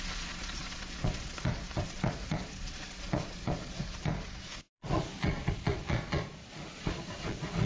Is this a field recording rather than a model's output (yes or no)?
no